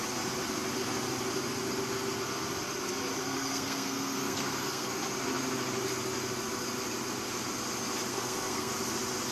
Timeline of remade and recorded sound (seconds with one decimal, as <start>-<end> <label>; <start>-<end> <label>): 0.0-3.2 recorded; 3.2-4.9 remade; 4.9-8.1 recorded; 8.1-8.7 remade; 8.7-9.3 recorded

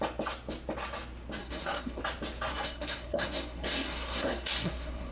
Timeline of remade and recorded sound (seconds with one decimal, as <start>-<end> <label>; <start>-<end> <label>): 0.0-1.4 recorded; 1.4-2.0 remade; 2.0-2.5 recorded; 2.5-5.1 remade

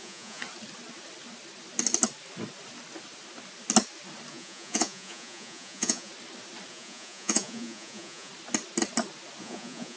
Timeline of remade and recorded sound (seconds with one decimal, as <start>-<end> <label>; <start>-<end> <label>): 0.0-0.4 remade; 0.4-4.3 recorded; 4.3-6.1 remade; 6.1-6.7 recorded; 6.7-8.3 remade; 8.3-9.4 recorded; 9.4-10.0 remade

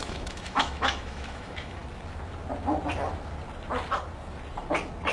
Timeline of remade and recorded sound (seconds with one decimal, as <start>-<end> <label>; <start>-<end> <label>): 0.0-1.8 remade; 1.8-5.1 recorded

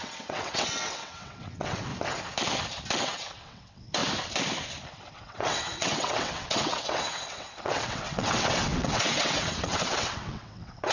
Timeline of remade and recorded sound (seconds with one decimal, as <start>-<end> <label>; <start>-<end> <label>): 0.0-1.9 remade; 1.9-3.0 recorded; 3.0-4.0 remade; 4.0-4.9 recorded; 4.9-10.9 remade

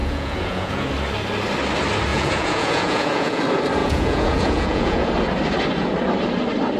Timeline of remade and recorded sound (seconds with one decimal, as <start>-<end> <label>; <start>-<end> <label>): 0.0-0.9 remade; 0.9-2.1 recorded; 2.1-3.4 remade; 3.4-3.8 recorded; 3.8-5.1 remade; 5.1-6.8 recorded

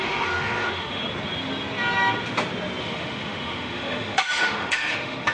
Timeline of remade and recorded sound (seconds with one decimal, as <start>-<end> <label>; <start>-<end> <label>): 0.0-1.0 remade; 1.0-2.8 recorded; 2.8-5.3 remade